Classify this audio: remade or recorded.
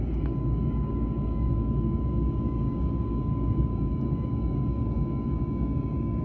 remade